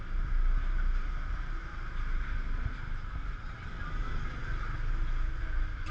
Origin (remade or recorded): recorded